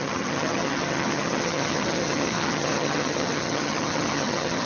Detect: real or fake fake